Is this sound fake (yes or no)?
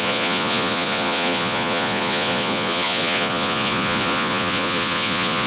yes